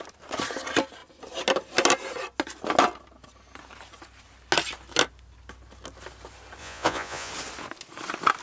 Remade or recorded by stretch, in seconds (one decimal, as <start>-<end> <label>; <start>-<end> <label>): 0.0-6.6 recorded; 6.6-7.3 remade; 7.3-8.4 recorded